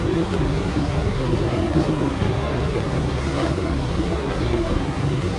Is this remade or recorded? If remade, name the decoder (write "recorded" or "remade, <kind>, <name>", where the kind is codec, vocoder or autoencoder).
remade, codec, SNAC